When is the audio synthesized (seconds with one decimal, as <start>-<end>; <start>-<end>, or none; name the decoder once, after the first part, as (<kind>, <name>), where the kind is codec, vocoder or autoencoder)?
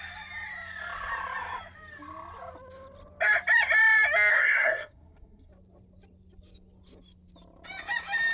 4.3-5.5 (codec, SNAC)